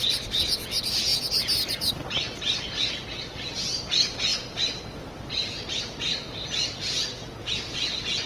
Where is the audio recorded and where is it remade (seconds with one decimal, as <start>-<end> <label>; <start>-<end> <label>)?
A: 0.0-8.3 recorded